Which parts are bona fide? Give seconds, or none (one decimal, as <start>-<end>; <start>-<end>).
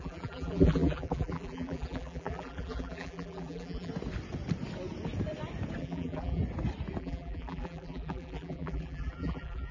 3.9-5.8; 6.4-7.0